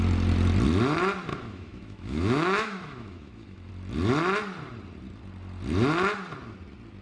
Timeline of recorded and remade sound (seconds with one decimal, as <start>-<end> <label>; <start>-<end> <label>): 0.0-1.3 recorded; 1.3-3.7 remade; 3.7-7.0 recorded